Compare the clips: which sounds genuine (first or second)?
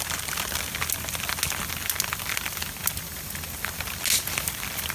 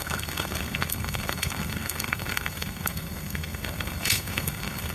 first